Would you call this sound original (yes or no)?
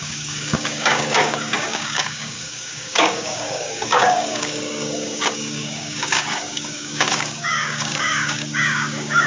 no